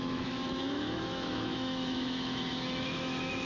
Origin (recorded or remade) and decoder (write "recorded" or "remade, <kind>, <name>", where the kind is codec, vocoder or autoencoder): remade, autoencoder, DAC-VAE